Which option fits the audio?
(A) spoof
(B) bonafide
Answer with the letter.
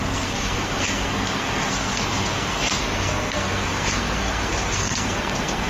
A